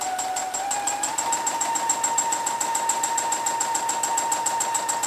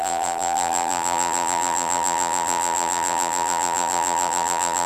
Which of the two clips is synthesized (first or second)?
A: second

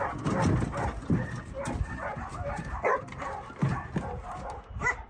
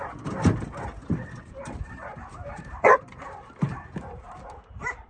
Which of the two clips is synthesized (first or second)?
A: second